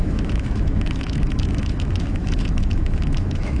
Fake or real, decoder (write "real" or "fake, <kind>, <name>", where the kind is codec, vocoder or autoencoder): fake, autoencoder, DAC-VAE